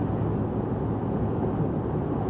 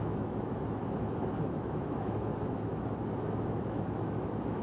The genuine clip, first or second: first